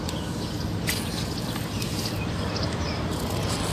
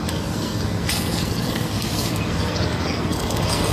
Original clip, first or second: first